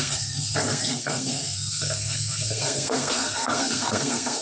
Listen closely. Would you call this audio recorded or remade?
remade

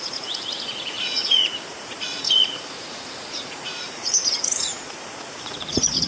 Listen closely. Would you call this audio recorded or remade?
remade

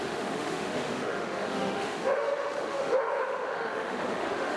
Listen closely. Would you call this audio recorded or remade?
remade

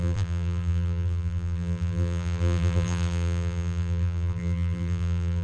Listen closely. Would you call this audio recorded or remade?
remade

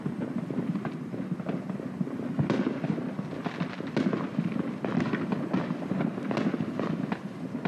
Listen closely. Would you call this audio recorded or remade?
recorded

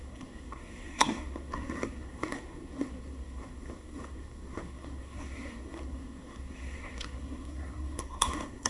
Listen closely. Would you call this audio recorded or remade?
remade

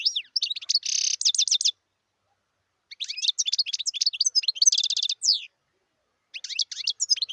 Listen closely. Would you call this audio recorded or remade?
recorded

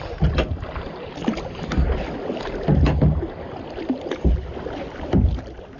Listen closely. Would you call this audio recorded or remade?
recorded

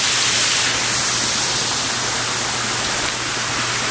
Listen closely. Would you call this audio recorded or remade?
recorded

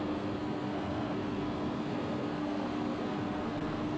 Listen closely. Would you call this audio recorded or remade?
remade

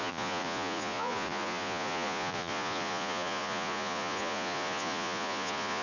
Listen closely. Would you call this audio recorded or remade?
remade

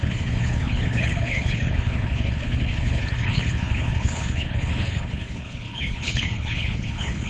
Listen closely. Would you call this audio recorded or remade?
remade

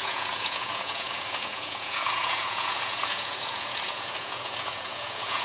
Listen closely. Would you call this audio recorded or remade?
remade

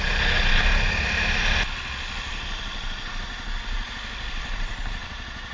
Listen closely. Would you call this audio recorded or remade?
recorded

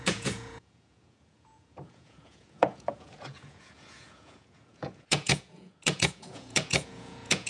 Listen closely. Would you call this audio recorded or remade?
remade